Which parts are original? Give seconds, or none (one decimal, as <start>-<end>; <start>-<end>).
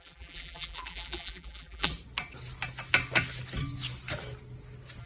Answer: 1.9-5.0